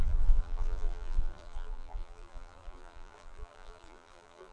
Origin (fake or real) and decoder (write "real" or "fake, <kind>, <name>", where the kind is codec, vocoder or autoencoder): fake, vocoder, BigVGAN v2